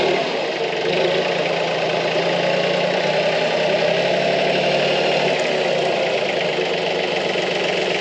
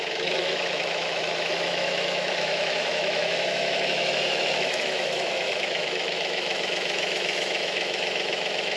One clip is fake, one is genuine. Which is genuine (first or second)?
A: first